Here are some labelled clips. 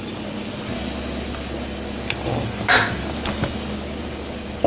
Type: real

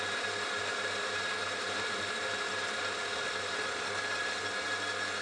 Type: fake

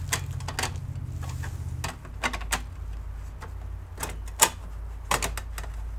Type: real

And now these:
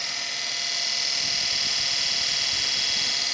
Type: real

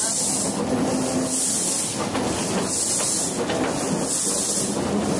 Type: real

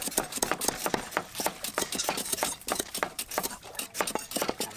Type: fake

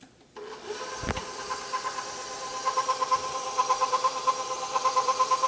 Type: fake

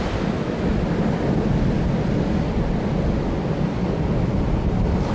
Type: real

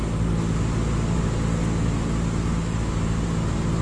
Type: real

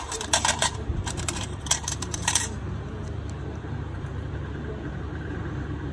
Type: fake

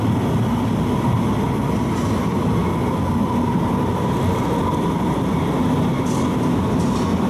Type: real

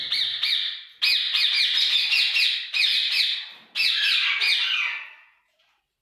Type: real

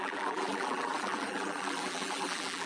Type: fake